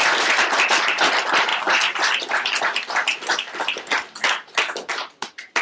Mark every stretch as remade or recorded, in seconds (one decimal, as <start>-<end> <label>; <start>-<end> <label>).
0.0-1.5 remade; 1.5-4.9 recorded; 4.9-5.6 remade